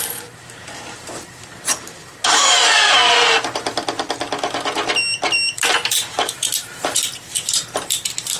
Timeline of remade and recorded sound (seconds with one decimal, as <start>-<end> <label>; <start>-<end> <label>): 0.0-3.0 remade; 3.0-5.7 recorded; 5.7-8.4 remade